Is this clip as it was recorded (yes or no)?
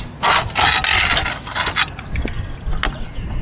yes